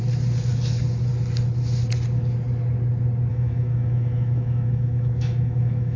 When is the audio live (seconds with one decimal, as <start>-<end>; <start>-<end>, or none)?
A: 0.0-3.3